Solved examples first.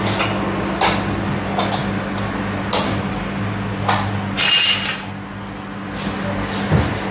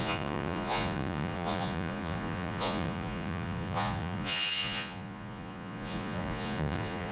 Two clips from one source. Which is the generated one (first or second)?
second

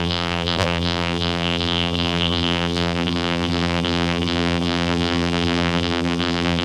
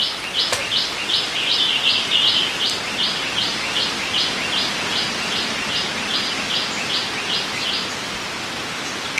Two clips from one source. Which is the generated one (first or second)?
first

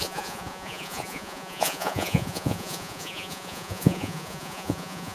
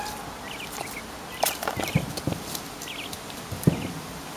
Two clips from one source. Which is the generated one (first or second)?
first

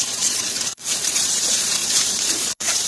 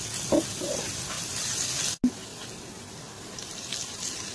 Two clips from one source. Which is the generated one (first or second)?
first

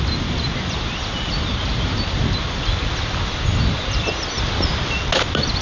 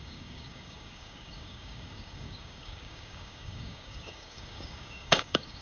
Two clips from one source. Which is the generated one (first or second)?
second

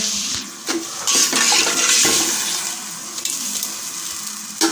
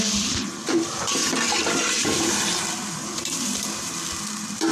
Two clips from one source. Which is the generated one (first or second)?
second